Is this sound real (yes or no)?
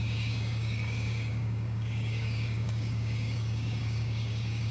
no